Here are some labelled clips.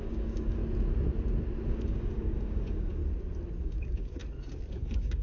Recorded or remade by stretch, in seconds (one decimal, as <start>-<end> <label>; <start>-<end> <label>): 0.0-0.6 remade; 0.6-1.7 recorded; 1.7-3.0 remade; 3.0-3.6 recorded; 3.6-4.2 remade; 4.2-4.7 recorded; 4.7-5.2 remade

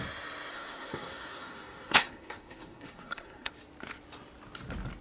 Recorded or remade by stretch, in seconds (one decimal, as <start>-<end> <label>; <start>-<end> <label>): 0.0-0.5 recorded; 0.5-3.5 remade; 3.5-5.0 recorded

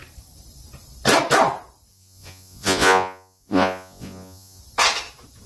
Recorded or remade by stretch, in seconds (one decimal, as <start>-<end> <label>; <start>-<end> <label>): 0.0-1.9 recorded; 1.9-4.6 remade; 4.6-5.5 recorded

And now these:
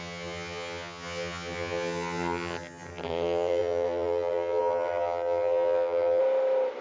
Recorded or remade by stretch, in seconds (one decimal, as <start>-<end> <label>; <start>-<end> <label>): 0.0-6.2 remade; 6.2-6.8 recorded

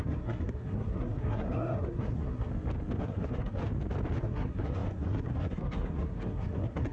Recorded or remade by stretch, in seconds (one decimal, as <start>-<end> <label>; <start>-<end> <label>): 0.0-2.5 remade; 2.5-3.0 recorded; 3.0-3.6 remade; 3.6-4.2 recorded; 4.2-6.9 remade